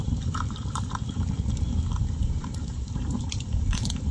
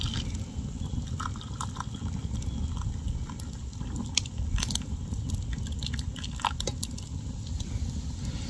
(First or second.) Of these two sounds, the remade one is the first